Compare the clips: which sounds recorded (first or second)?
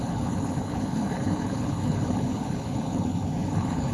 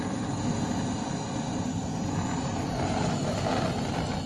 second